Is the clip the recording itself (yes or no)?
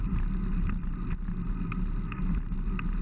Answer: yes